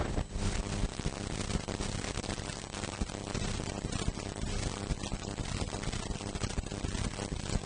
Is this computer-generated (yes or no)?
no